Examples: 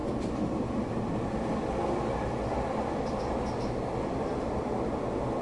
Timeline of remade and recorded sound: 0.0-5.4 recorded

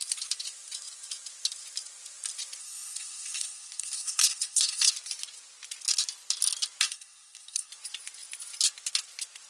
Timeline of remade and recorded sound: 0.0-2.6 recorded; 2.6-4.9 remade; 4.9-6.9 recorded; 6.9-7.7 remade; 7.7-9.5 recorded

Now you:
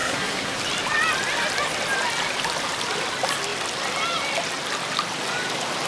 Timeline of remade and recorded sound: 0.0-0.6 remade; 0.6-5.9 recorded

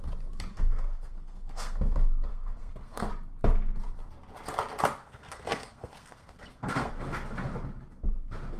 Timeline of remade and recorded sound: 0.0-0.5 recorded; 0.5-1.8 remade; 1.8-2.3 recorded; 2.3-3.1 remade; 3.1-5.0 recorded; 5.0-6.9 remade; 6.9-8.6 recorded